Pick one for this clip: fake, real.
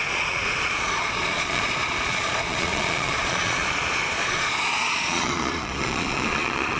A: fake